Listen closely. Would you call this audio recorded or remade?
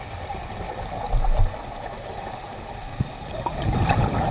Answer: recorded